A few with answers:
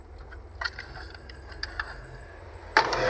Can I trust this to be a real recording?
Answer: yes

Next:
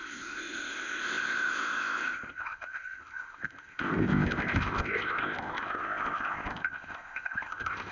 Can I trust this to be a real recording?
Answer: no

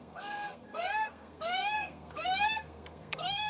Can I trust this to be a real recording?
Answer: no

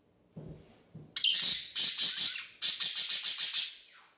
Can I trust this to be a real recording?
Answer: yes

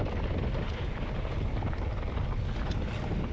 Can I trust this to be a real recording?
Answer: yes